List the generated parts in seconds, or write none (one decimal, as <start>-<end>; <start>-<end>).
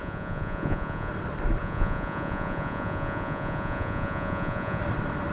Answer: 0.0-1.1; 1.6-4.8